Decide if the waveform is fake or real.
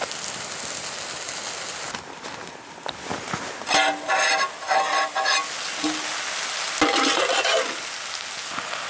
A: real